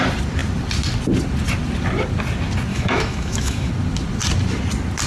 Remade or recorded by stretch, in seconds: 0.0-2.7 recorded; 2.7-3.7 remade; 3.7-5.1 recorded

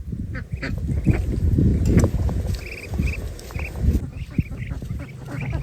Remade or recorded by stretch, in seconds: 0.0-5.6 recorded